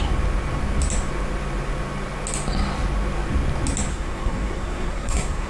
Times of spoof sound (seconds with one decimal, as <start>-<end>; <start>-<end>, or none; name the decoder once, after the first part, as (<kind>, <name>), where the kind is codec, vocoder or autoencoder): 3.9-5.5 (codec, SNAC)